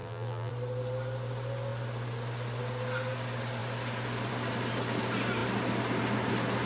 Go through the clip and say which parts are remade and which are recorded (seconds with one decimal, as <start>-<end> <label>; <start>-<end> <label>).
0.0-0.5 remade; 0.5-6.7 recorded